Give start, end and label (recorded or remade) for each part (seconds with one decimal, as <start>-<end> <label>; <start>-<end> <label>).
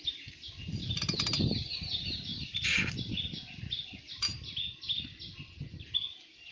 0.0-6.5 recorded